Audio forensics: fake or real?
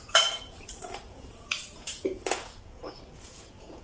fake